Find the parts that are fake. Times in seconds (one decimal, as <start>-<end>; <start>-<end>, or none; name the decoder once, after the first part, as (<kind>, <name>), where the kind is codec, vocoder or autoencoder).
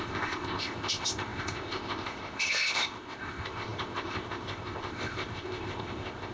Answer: 0.0-6.3 (codec, ZipCodec)